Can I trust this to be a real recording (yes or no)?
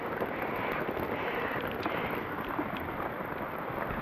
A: yes